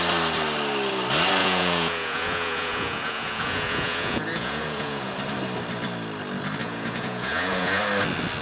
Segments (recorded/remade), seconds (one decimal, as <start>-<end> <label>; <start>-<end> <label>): 0.0-1.4 recorded; 1.4-5.1 remade; 5.1-6.6 recorded; 6.6-7.8 remade; 7.8-8.4 recorded